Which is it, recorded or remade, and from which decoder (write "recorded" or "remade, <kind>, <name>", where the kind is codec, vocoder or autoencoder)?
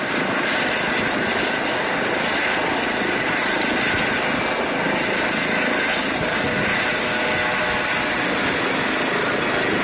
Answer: recorded